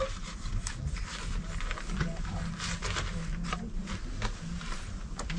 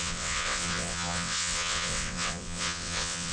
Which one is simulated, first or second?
second